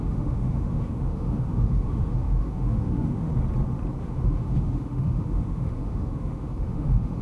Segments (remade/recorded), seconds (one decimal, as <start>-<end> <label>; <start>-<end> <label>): 0.0-3.3 remade; 3.3-4.0 recorded; 4.0-7.2 remade